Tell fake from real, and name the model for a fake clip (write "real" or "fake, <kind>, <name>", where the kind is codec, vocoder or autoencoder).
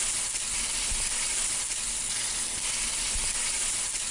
real